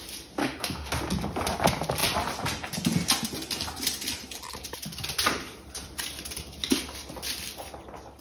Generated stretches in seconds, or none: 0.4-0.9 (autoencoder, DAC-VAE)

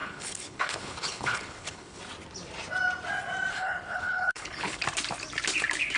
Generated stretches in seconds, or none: 0.0-2.0 (codec, HILCodec); 3.5-4.8

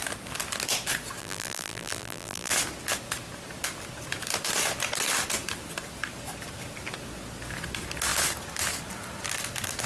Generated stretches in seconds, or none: 1.2-2.5 (vocoder, BigVGAN v2)